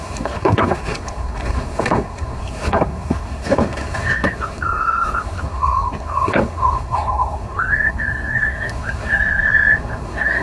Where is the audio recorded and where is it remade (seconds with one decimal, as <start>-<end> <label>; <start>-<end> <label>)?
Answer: 0.0-10.4 remade